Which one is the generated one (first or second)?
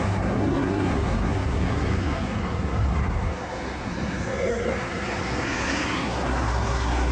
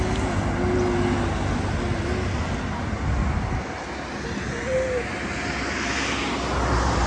first